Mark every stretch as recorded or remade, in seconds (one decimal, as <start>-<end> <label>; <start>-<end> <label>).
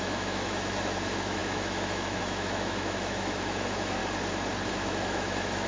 0.0-4.0 remade; 4.0-4.7 recorded; 4.7-5.7 remade